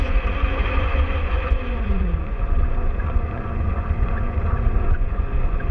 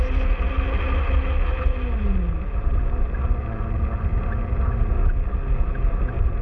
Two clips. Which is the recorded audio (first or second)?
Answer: second